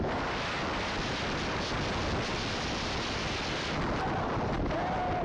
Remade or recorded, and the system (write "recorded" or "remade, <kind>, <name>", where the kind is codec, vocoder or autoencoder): recorded